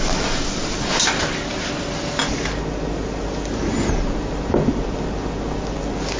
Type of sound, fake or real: real